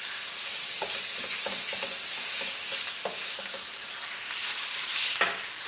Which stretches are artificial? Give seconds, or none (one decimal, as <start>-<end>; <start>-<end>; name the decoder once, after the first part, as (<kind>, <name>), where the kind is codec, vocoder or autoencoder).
3.2-3.8 (vocoder, BigVGAN v2); 4.5-5.2

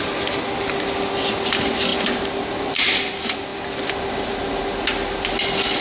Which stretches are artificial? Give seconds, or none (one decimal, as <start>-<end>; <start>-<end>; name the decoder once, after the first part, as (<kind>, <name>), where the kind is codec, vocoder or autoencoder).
none